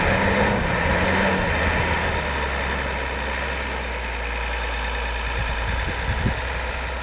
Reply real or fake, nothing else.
real